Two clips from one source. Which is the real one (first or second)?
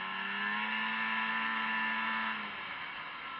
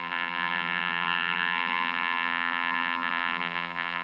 first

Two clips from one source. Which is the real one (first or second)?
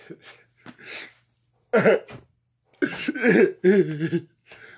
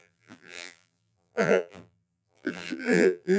first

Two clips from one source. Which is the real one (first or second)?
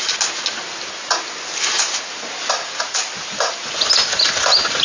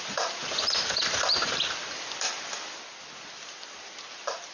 first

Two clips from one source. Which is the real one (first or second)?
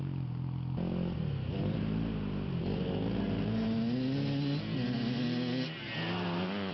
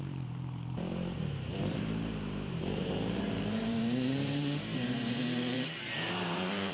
first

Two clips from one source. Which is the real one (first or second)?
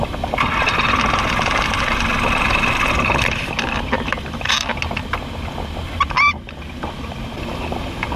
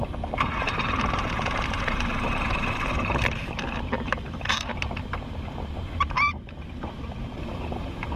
first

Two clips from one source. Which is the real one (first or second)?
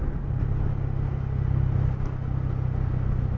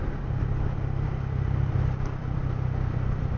first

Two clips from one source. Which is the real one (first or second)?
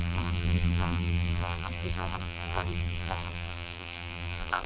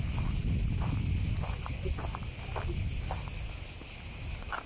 second